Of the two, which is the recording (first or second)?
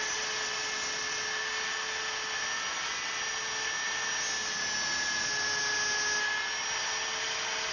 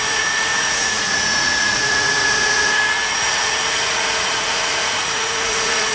first